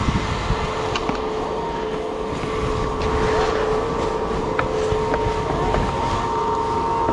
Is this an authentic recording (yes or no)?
yes